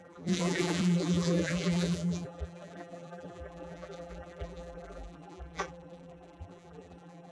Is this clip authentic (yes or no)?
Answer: no